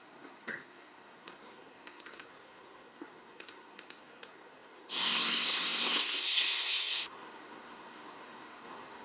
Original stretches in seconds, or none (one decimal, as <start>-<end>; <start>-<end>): none